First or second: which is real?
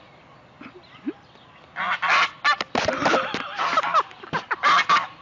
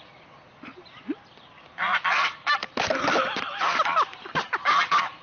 first